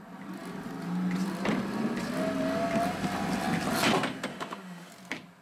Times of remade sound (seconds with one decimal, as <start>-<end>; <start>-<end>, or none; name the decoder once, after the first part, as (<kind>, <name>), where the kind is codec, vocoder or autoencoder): 4.3-4.9 (autoencoder, DAC-VAE)